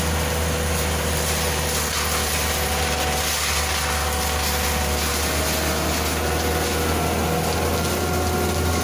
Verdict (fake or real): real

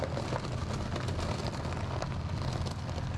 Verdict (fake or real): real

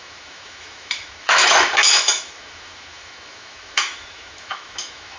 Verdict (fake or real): fake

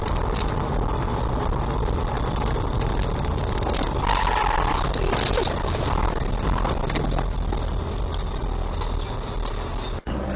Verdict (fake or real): real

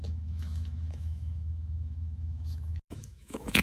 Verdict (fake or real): fake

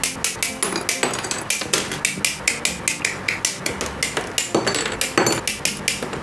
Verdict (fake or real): real